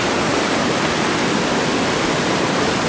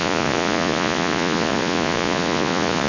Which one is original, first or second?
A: first